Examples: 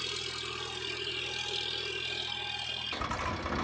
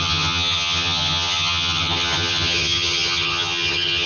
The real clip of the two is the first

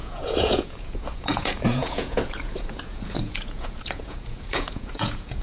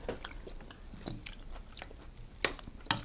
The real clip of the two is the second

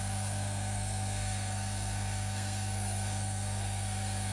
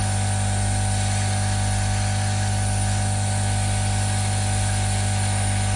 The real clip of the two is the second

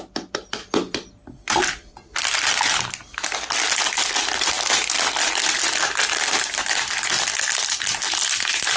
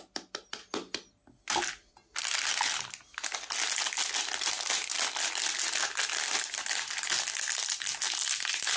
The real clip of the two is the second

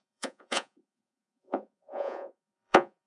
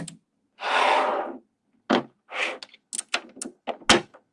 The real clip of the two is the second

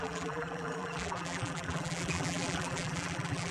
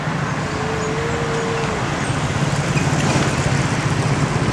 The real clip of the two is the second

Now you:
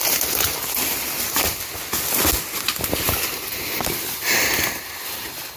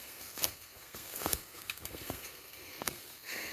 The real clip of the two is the first